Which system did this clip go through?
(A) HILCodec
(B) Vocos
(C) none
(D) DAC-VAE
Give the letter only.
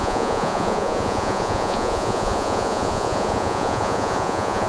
B